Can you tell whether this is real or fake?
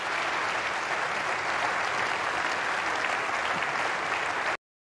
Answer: real